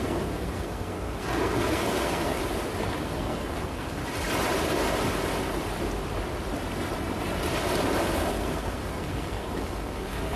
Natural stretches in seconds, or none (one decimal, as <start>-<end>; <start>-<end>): 2.4-3.0; 4.0-8.3